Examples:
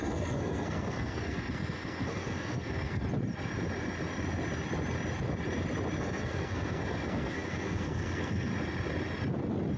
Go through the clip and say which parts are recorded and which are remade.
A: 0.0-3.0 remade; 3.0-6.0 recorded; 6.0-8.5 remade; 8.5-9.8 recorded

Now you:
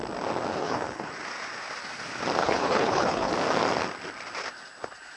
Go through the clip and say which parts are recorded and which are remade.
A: 0.0-0.5 recorded; 0.5-1.1 remade; 1.1-2.4 recorded; 2.4-3.3 remade; 3.3-5.2 recorded